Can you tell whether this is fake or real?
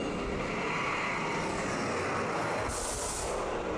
real